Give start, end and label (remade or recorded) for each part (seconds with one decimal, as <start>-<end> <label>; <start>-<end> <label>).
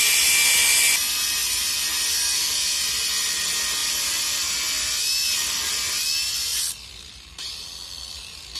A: 0.0-8.6 recorded